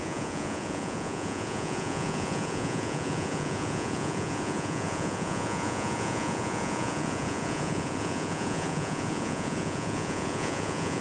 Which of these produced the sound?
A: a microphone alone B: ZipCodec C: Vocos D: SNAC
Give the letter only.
C